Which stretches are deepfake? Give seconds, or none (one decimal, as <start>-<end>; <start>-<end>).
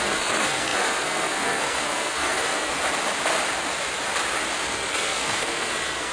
0.0-2.7; 4.7-6.1